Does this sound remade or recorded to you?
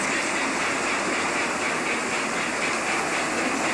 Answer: recorded